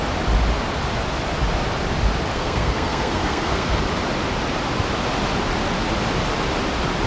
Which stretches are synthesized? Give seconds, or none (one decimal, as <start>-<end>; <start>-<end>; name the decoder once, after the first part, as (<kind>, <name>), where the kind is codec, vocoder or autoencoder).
2.3-3.8 (codec, SNAC)